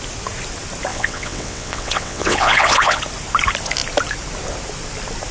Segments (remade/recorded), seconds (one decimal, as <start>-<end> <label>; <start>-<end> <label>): 0.0-0.9 recorded; 0.9-3.0 remade; 3.0-5.3 recorded